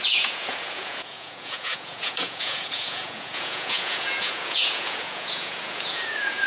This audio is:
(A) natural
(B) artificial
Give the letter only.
B